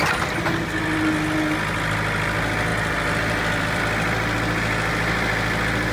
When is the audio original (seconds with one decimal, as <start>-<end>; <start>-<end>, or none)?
0.0-2.7; 3.8-5.9